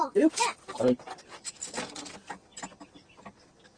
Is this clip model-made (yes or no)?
no